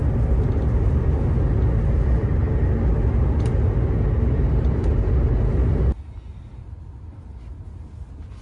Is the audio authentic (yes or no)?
yes